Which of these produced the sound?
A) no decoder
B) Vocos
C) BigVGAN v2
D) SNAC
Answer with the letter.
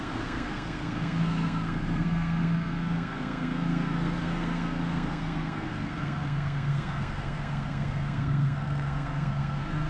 D